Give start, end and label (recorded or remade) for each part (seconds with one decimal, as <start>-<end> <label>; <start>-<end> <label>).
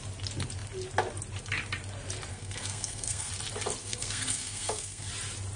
0.0-2.3 recorded; 2.3-3.3 remade; 3.3-3.8 recorded; 3.8-5.1 remade; 5.1-5.6 recorded